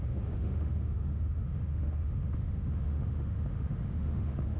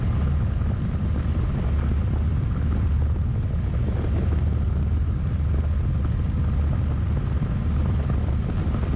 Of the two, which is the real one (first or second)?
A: second